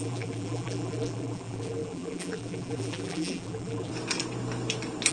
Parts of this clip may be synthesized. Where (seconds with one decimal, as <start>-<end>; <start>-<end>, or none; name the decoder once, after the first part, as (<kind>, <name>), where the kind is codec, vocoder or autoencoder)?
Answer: 0.0-3.9 (vocoder, BigVGAN v2)